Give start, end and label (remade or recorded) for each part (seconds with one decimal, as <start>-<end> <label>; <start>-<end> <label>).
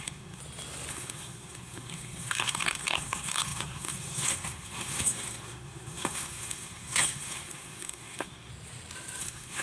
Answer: 0.0-0.4 remade; 0.4-0.9 recorded; 0.9-8.5 remade; 8.5-9.2 recorded; 9.2-9.6 remade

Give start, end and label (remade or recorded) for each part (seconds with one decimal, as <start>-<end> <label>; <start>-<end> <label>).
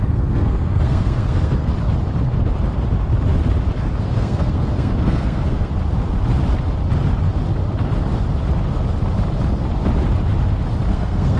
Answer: 0.0-1.7 remade; 1.7-4.0 recorded; 4.0-5.7 remade; 5.7-10.9 recorded; 10.9-11.4 remade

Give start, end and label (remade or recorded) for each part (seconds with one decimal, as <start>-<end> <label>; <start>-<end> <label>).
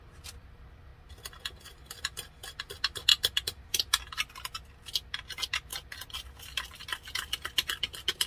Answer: 0.0-3.1 recorded; 3.1-3.7 remade; 3.7-8.3 recorded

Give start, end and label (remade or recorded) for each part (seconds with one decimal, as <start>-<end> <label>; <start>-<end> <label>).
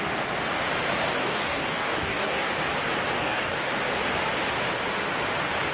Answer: 0.0-1.2 recorded; 1.2-2.5 remade; 2.5-3.2 recorded; 3.2-3.7 remade; 3.7-5.7 recorded